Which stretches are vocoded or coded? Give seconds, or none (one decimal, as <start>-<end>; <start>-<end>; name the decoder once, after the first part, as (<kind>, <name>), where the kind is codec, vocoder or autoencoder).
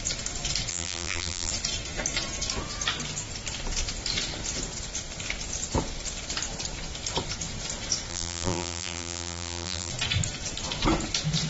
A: 0.7-1.5 (vocoder, BigVGAN v2); 8.1-9.9